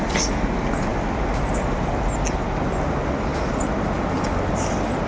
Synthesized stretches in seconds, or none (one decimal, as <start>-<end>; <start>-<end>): none